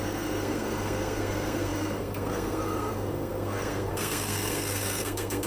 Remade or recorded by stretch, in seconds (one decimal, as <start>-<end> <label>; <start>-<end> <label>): 0.0-5.5 remade